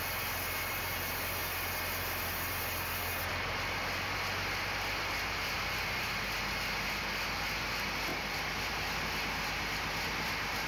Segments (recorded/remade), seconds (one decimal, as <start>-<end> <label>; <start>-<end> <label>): 0.0-10.7 recorded